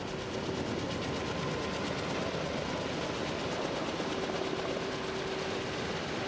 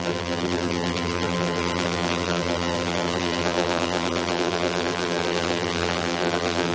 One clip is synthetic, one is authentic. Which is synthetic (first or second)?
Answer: second